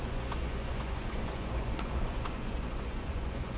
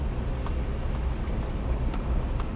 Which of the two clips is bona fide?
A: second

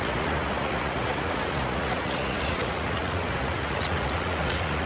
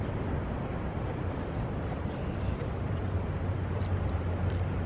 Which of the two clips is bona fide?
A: second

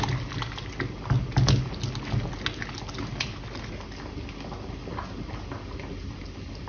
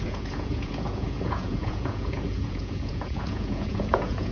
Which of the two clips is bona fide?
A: first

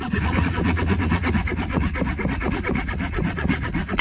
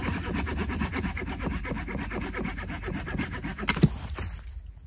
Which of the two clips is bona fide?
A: second